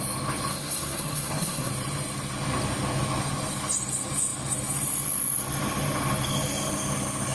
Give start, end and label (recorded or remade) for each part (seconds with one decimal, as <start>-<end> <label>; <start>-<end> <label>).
0.0-0.5 recorded; 0.5-1.7 remade; 1.7-7.3 recorded